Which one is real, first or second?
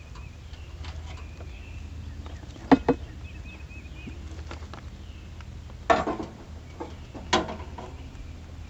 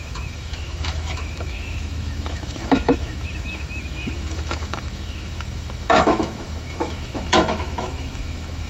first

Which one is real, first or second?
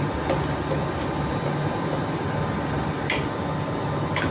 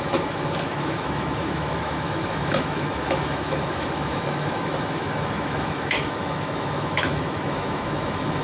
first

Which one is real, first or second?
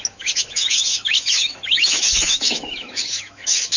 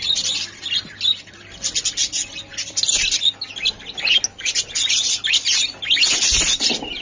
second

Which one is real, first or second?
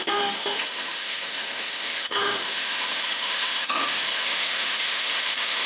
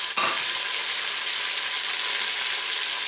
second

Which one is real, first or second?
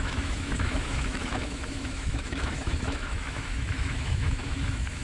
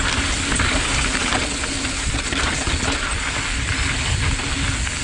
second